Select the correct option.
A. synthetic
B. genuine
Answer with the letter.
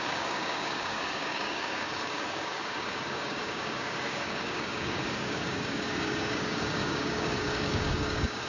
A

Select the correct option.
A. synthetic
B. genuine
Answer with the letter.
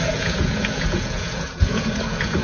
A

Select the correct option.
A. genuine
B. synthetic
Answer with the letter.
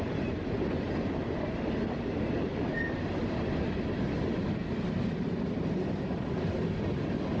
A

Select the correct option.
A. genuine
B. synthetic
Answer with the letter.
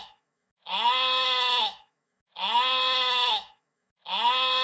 B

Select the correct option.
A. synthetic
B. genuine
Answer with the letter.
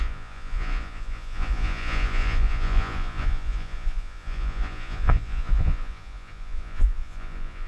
A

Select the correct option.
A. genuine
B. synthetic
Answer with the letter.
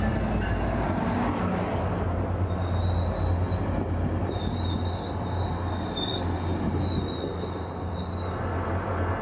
A